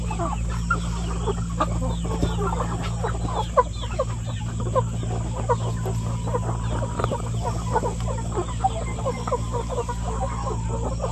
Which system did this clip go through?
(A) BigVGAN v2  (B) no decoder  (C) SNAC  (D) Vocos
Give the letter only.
B